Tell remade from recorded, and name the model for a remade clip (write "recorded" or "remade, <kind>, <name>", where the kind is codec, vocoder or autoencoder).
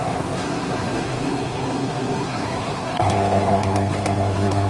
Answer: remade, codec, SNAC